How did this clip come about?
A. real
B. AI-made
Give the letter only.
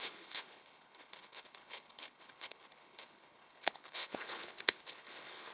B